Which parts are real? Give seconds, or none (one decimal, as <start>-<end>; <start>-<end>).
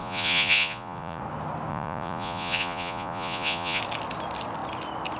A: 1.2-1.7; 3.8-5.2